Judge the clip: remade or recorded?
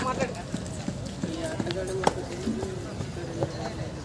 recorded